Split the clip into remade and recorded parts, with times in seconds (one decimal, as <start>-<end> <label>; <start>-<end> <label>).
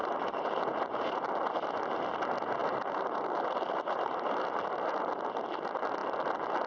0.0-1.3 remade; 1.3-2.6 recorded; 2.6-5.0 remade; 5.0-6.7 recorded